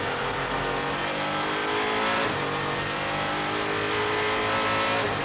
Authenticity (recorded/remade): recorded